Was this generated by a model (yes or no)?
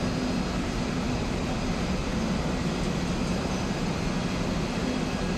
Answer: no